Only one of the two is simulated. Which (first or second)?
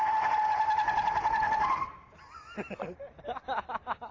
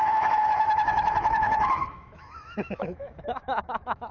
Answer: second